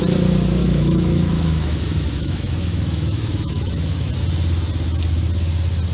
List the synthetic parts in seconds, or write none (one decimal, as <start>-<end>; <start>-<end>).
0.6-4.1